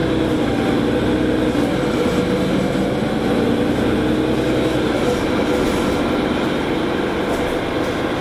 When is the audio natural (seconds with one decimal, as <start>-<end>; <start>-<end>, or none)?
0.0-8.2